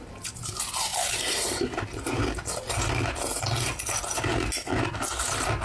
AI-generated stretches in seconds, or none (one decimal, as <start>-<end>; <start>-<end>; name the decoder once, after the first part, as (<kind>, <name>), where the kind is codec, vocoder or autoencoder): none